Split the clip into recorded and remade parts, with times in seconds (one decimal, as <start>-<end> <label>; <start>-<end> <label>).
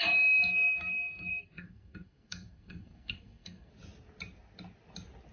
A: 0.0-0.5 recorded; 0.5-3.7 remade; 3.7-5.3 recorded